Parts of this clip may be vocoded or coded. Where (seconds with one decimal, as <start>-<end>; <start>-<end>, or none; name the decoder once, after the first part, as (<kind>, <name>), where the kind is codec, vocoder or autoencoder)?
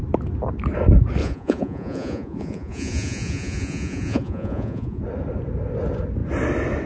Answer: 1.2-5.0 (vocoder, Vocos)